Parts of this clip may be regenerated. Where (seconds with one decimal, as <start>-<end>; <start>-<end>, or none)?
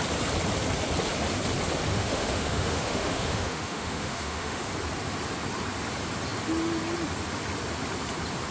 1.9-4.7